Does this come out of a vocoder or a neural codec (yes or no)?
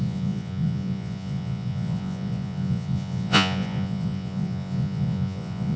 yes